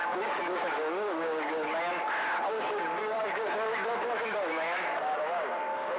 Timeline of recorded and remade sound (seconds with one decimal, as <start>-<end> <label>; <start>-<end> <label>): 0.0-1.7 remade; 1.7-2.5 recorded; 2.5-6.0 remade

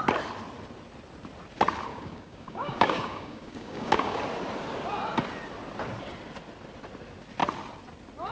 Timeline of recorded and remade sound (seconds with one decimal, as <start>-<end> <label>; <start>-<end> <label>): 0.0-1.9 recorded; 1.9-4.2 remade; 4.2-8.3 recorded

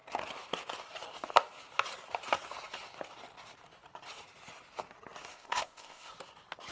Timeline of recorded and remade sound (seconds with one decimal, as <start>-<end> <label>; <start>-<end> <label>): 0.0-5.3 recorded; 5.3-6.1 remade; 6.1-6.7 recorded

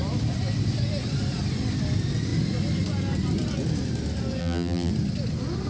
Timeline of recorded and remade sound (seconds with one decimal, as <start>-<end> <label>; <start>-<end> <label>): 0.0-4.4 recorded; 4.4-4.9 remade; 4.9-5.7 recorded

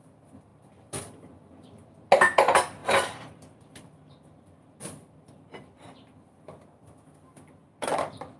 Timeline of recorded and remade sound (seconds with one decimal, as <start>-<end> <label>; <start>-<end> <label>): 0.0-0.5 recorded; 0.5-1.3 remade; 1.3-2.8 recorded; 2.8-6.6 remade; 6.6-7.6 recorded; 7.6-8.4 remade

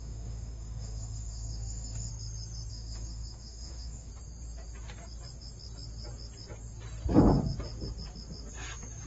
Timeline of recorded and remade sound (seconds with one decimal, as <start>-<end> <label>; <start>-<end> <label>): 0.0-2.1 remade; 2.1-2.7 recorded; 2.7-4.1 remade; 4.1-9.1 recorded

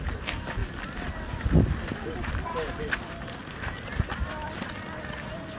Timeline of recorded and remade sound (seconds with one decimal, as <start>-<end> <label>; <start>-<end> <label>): 0.0-5.6 recorded